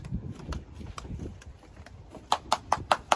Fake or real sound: fake